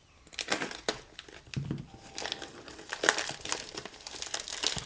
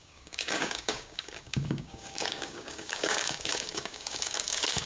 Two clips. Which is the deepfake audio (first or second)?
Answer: second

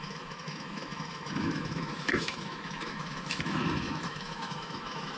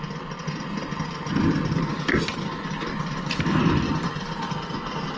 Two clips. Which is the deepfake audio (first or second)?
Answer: first